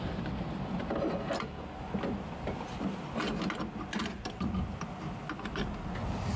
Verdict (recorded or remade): recorded